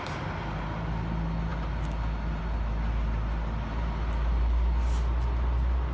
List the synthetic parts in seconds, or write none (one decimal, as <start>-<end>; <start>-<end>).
none